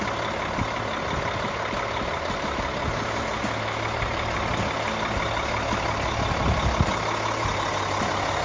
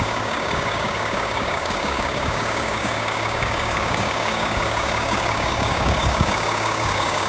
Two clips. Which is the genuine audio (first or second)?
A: first